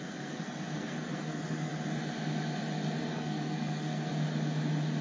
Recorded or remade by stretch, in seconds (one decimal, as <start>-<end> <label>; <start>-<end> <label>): 0.0-1.7 remade; 1.7-3.0 recorded; 3.0-4.1 remade; 4.1-5.0 recorded

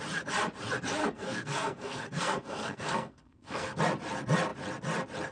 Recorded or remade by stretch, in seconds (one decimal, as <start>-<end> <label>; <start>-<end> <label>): 0.0-1.0 recorded; 1.0-3.8 remade; 3.8-5.3 recorded

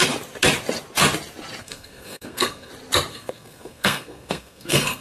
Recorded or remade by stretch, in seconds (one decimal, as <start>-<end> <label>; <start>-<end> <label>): 0.0-1.6 recorded; 1.6-2.7 remade; 2.7-3.1 recorded; 3.1-5.0 remade